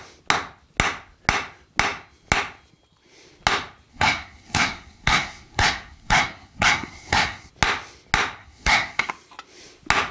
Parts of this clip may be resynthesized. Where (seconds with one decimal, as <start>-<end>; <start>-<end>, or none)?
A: 3.9-7.5; 8.4-9.1